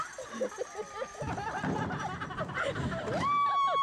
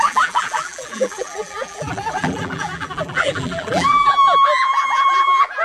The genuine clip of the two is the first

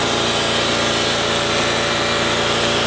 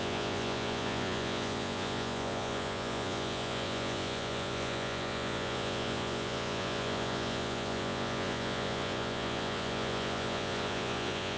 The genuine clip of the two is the first